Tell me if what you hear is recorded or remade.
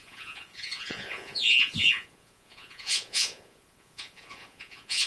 remade